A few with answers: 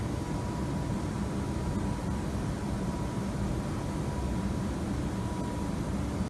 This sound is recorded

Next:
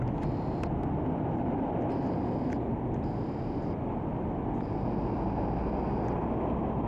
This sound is recorded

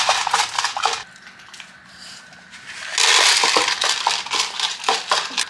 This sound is recorded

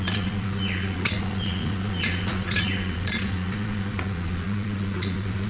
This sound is remade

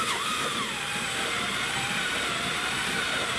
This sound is remade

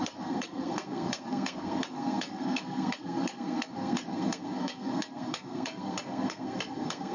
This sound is remade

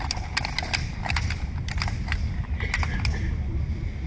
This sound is recorded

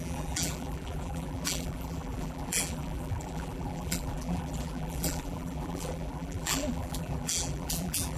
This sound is remade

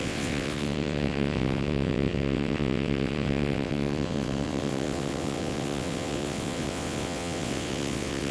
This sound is remade